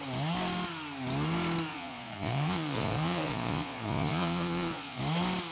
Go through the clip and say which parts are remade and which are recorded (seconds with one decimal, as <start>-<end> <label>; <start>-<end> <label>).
0.0-1.7 recorded; 1.7-5.0 remade; 5.0-5.5 recorded